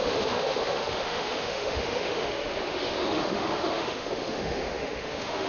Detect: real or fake fake